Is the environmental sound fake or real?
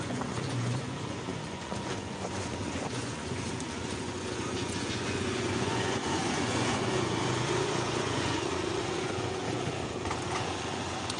fake